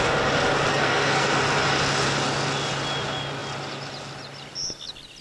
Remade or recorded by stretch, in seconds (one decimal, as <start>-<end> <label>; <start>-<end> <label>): 0.0-0.7 recorded; 0.7-1.4 remade; 1.4-5.2 recorded